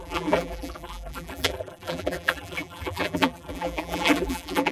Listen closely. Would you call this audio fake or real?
fake